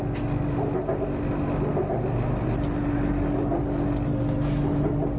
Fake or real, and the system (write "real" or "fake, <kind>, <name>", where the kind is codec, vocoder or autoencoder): real